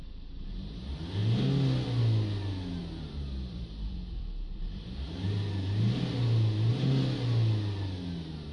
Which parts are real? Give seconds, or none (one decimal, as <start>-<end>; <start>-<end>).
0.0-2.8; 4.7-6.1; 6.7-8.5